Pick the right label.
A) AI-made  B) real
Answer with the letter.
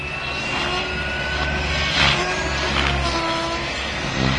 B